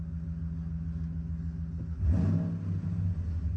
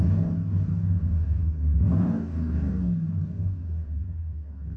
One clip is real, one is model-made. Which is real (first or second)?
first